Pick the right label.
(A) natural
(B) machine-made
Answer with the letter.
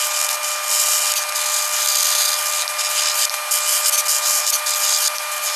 A